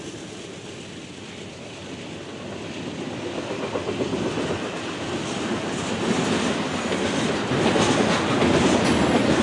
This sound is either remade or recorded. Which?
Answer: recorded